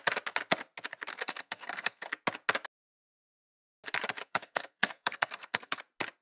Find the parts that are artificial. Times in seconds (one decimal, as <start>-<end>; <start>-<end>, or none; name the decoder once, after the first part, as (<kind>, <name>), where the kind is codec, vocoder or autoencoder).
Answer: 1.1-2.1 (codec, SNAC); 4.2-5.8